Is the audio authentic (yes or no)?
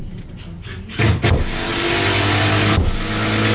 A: yes